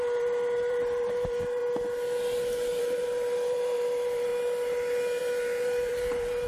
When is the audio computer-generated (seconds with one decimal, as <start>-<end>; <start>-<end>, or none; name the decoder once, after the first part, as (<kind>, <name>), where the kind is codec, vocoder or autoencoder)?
0.0-1.6 (vocoder, BigVGAN v2); 2.8-4.3; 5.2-6.5